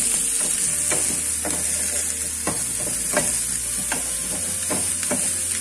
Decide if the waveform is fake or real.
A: real